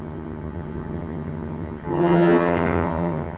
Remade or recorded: remade